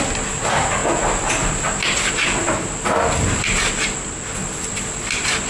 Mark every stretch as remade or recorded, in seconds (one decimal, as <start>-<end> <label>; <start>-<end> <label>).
0.0-5.5 recorded